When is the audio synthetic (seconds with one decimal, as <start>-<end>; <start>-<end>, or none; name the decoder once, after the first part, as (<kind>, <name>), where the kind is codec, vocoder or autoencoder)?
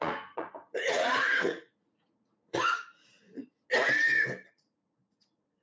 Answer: 0.0-3.6 (vocoder, Vocos); 4.5-5.6